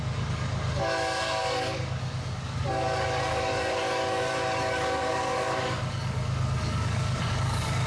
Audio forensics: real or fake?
fake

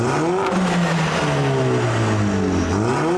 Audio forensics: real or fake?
real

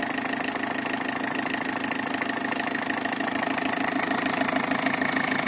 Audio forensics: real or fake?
real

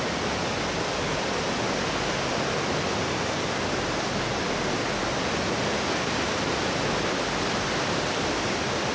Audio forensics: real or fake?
real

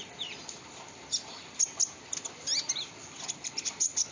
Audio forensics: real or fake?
real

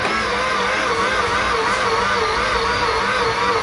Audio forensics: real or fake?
real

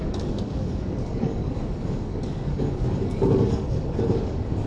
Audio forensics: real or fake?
fake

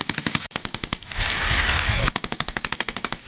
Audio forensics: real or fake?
fake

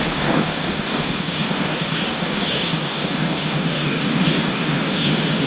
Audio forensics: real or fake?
fake